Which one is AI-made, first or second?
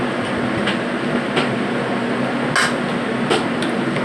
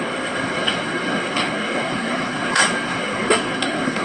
second